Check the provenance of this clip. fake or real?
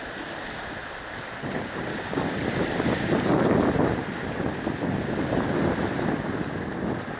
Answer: real